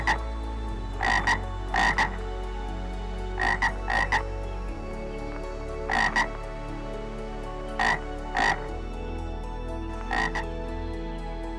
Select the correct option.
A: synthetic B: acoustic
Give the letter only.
B